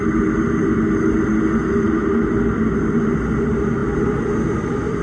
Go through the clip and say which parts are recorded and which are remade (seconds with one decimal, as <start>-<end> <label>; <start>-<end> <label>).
0.0-5.0 recorded

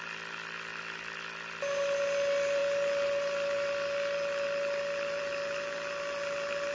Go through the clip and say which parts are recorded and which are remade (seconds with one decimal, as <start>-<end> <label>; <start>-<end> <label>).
0.0-6.7 recorded

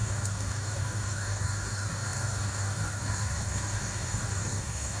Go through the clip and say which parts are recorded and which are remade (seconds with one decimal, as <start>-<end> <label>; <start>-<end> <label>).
0.0-5.0 remade

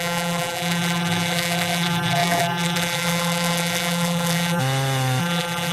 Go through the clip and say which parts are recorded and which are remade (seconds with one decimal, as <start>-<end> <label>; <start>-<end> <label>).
0.0-4.6 remade; 4.6-5.2 recorded; 5.2-5.7 remade

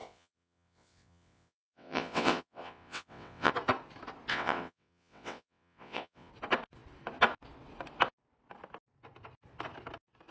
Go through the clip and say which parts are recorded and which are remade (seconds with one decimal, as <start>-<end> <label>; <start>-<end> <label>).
0.0-3.5 remade; 3.5-4.3 recorded; 4.3-6.3 remade; 6.3-10.3 recorded

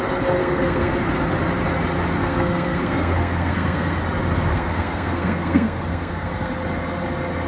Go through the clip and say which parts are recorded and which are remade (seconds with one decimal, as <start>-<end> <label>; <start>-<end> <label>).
0.0-0.4 recorded; 0.4-0.9 remade; 0.9-2.2 recorded; 2.2-4.0 remade; 4.0-4.5 recorded; 4.5-6.5 remade; 6.5-7.5 recorded